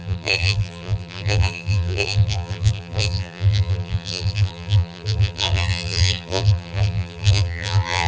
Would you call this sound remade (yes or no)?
yes